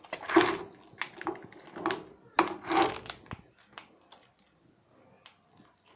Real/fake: real